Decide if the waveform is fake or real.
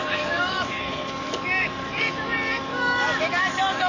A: fake